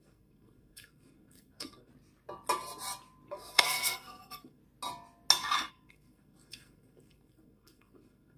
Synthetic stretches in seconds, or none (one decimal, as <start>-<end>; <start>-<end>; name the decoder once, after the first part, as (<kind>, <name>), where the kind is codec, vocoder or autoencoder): 0.0-1.9 (codec, SNAC); 3.3-4.6; 5.7-8.4